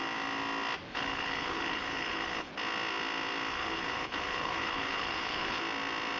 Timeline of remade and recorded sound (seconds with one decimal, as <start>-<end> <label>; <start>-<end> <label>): 0.0-0.9 recorded; 0.9-2.5 remade; 2.5-3.5 recorded; 3.5-5.6 remade; 5.6-6.2 recorded